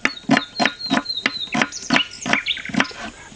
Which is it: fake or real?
real